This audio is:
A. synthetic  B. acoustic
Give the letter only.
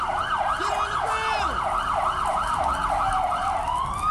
B